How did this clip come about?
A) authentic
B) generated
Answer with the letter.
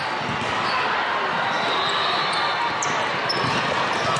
A